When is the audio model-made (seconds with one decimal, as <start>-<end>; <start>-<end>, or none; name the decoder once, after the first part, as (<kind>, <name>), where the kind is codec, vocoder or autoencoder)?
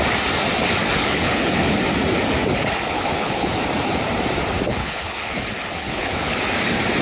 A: 0.9-1.8 (codec, HILCodec); 2.5-3.6; 4.7-6.4